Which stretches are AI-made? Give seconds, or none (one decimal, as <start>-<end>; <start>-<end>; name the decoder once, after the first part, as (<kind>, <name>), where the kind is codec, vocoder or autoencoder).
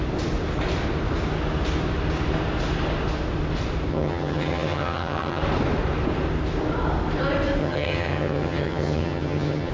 3.9-5.4 (vocoder, HiFi-GAN); 7.6-9.7